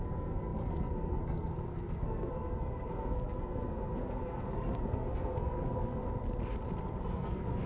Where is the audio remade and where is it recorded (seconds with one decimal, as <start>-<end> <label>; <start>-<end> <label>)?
0.0-6.0 remade; 6.0-7.0 recorded; 7.0-7.7 remade